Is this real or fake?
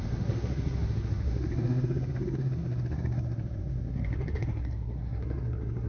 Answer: fake